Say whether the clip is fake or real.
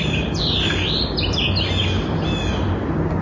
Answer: real